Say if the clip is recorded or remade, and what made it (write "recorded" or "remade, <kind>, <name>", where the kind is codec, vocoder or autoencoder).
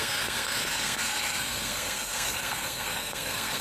remade, codec, SNAC